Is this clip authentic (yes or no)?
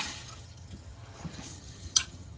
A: no